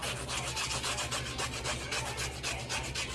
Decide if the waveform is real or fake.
real